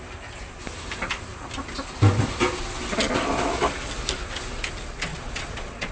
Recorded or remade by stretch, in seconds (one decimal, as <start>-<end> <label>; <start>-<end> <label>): 0.0-5.1 recorded; 5.1-5.9 remade